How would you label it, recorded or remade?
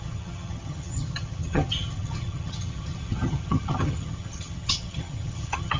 remade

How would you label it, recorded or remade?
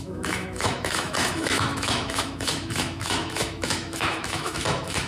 remade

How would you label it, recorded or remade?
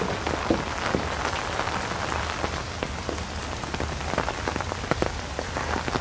recorded